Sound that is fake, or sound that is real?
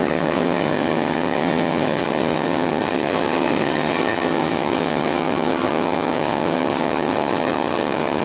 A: fake